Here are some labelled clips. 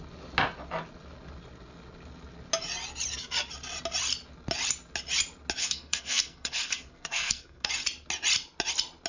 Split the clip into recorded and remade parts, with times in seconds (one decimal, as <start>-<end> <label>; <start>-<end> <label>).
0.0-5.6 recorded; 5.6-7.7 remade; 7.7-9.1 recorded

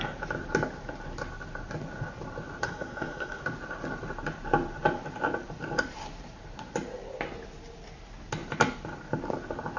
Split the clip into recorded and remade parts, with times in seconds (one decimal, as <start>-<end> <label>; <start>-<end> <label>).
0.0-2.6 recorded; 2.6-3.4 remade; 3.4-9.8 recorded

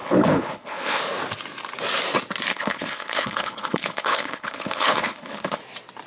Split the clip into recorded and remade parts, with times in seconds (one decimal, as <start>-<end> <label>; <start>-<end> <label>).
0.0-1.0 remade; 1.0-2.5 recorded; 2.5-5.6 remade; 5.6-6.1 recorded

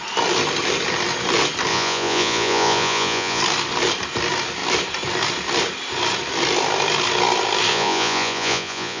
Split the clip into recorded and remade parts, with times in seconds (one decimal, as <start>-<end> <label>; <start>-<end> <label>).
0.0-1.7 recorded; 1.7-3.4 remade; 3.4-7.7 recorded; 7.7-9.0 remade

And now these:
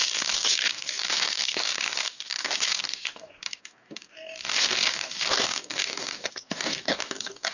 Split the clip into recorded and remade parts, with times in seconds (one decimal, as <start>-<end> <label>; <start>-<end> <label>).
0.0-7.5 remade